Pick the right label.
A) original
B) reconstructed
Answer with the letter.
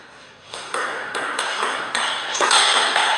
B